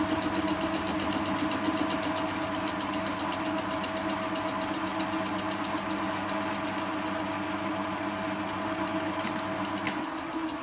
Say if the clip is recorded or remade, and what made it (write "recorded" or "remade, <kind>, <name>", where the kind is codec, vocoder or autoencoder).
recorded